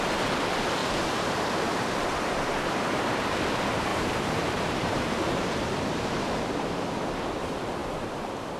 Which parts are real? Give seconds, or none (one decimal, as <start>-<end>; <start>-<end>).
0.0-0.8; 3.1-3.9; 6.4-8.6